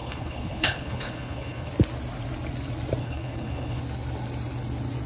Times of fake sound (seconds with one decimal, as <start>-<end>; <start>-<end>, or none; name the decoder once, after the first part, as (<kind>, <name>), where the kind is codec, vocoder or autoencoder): 0.0-1.7 (codec, HILCodec); 3.0-3.8